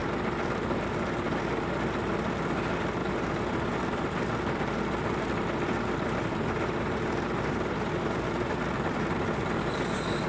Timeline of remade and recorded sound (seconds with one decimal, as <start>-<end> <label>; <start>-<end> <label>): 0.0-3.0 recorded; 3.0-7.4 remade; 7.4-10.3 recorded